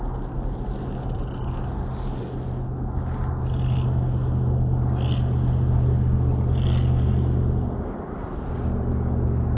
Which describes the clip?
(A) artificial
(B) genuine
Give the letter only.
B